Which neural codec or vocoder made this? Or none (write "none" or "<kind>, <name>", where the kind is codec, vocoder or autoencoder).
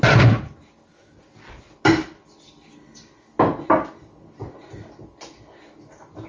none